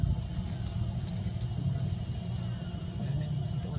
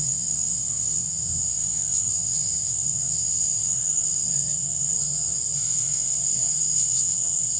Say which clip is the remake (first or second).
second